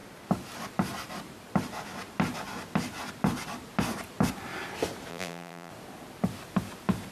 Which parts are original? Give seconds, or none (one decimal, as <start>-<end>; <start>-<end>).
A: 0.0-5.1; 5.7-7.1